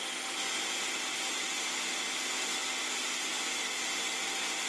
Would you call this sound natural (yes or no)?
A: yes